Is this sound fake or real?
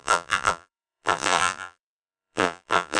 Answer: fake